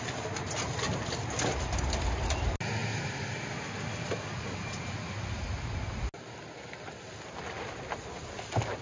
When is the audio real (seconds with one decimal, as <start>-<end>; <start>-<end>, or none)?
0.0-8.8